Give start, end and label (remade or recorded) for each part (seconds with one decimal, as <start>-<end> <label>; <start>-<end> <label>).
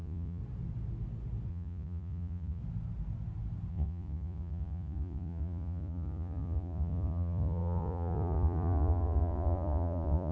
0.0-0.4 remade; 0.4-1.5 recorded; 1.5-2.6 remade; 2.6-3.7 recorded; 3.7-10.3 remade